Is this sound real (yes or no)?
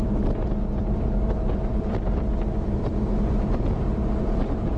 no